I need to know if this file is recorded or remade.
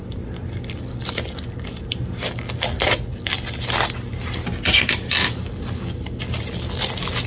recorded